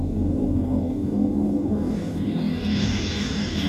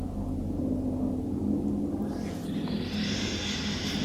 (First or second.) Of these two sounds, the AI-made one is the first